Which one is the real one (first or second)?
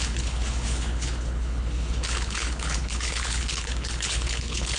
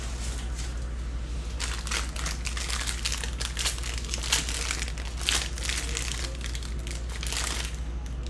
second